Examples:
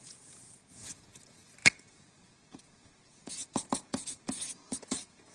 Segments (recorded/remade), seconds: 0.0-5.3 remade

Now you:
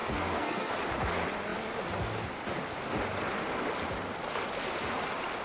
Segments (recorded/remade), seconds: 0.0-0.7 remade; 0.7-5.4 recorded

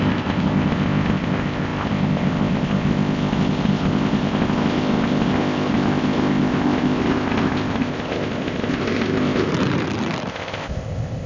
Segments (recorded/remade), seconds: 0.0-9.5 remade; 9.5-10.3 recorded; 10.3-11.3 remade

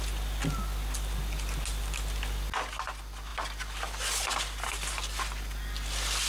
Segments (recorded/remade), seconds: 0.0-6.3 recorded

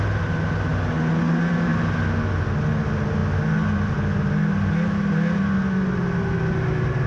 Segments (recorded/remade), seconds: 0.0-7.1 recorded